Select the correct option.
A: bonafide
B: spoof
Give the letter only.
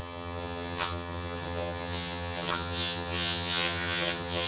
B